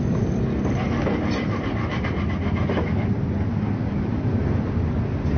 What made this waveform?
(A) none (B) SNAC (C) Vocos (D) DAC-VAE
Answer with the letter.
A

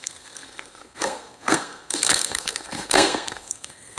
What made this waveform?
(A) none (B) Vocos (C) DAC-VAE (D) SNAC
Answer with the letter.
D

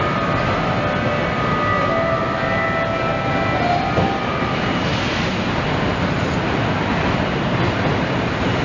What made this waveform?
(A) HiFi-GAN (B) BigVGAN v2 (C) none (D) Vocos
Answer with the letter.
C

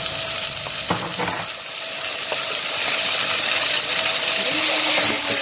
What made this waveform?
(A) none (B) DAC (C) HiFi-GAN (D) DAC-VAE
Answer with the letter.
A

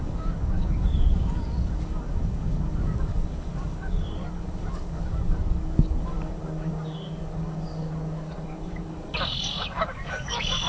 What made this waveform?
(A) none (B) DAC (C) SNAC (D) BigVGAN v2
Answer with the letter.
B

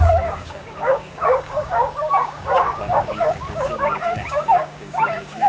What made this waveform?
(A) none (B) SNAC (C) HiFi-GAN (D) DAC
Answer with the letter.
D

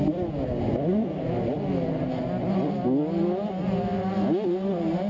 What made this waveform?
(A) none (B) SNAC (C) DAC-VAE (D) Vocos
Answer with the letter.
A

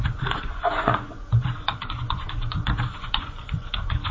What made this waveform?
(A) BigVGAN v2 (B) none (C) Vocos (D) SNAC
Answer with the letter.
C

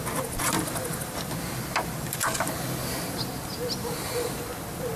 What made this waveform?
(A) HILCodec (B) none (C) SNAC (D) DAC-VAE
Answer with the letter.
B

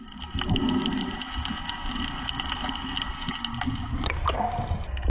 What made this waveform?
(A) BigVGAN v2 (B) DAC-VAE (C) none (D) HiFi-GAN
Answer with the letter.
C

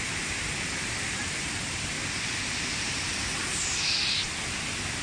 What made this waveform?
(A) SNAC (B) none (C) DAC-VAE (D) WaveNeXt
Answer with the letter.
B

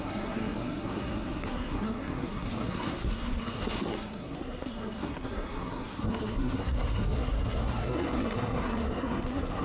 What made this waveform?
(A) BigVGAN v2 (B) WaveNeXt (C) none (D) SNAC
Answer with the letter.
D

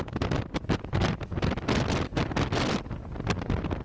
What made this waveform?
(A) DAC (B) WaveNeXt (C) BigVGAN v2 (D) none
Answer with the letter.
D